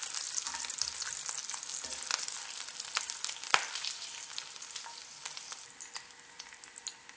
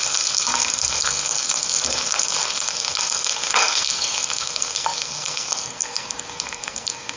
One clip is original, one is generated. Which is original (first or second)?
first